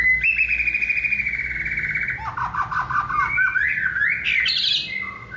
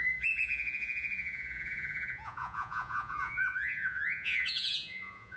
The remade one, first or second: second